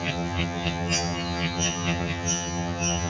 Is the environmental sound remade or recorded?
remade